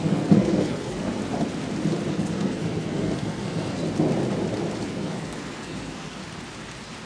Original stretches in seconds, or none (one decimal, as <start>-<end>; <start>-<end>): 1.2-2.1; 3.8-4.9; 6.2-7.1